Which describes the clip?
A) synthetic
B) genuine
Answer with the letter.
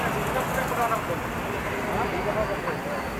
B